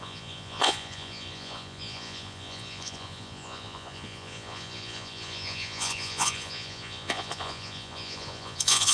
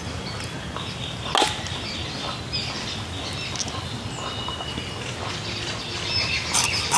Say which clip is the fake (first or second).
first